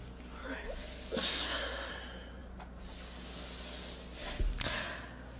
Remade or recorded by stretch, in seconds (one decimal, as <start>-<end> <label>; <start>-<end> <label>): 0.0-1.3 recorded; 1.3-1.9 remade; 1.9-5.4 recorded